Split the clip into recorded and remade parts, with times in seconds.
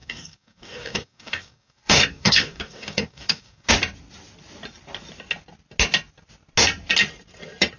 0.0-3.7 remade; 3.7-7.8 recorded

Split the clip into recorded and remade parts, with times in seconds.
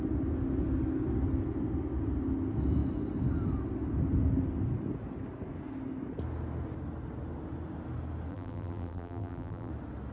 0.0-8.3 recorded; 8.3-9.7 remade; 9.7-10.1 recorded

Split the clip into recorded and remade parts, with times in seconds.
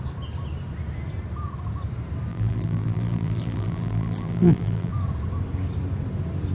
0.0-2.3 recorded; 2.3-4.9 remade; 4.9-6.5 recorded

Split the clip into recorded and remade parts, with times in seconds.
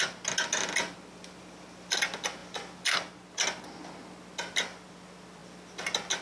0.0-6.2 recorded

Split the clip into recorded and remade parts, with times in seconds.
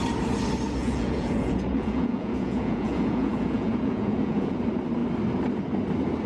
0.0-0.8 recorded; 0.8-4.6 remade; 4.6-6.3 recorded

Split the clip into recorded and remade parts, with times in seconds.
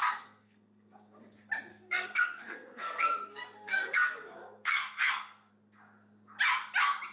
0.0-1.2 remade; 1.2-1.7 recorded; 1.7-5.5 remade; 5.5-7.1 recorded